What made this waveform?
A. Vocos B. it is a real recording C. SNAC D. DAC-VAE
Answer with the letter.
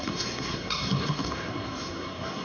C